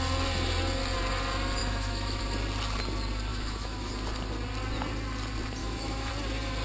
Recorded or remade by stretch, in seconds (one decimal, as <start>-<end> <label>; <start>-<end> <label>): 0.0-1.6 recorded; 1.6-2.2 remade; 2.2-3.3 recorded; 3.3-3.9 remade; 3.9-5.6 recorded; 5.6-6.1 remade; 6.1-6.6 recorded